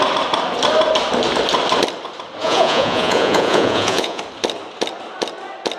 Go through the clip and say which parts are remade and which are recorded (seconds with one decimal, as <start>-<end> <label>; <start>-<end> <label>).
0.0-2.4 recorded; 2.4-4.2 remade; 4.2-5.8 recorded